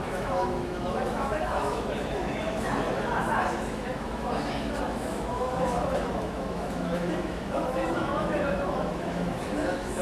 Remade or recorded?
remade